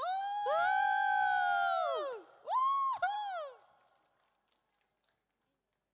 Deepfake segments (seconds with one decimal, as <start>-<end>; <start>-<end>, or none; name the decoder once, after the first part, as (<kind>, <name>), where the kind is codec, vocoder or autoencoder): none